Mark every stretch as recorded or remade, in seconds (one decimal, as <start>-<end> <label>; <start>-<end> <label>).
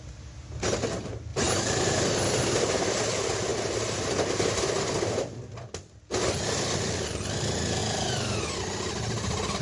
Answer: 0.0-1.3 recorded; 1.3-2.4 remade; 2.4-9.6 recorded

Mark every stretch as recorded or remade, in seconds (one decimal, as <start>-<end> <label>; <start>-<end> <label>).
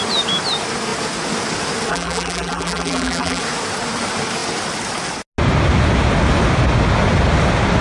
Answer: 0.0-1.9 recorded; 1.9-3.4 remade; 3.4-7.8 recorded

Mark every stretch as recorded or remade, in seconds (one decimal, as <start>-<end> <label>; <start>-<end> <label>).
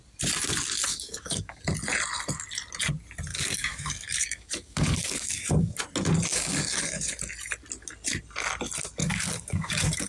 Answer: 0.0-0.9 recorded; 0.9-1.6 remade; 1.6-3.3 recorded; 3.3-5.8 remade; 5.8-6.3 recorded; 6.3-7.1 remade; 7.1-9.0 recorded; 9.0-10.1 remade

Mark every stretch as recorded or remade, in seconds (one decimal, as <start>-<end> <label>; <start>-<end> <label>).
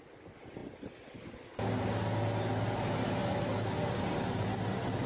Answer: 0.0-5.1 recorded